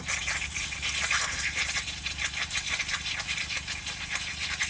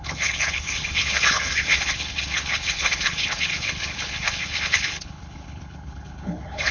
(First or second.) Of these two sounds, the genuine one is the first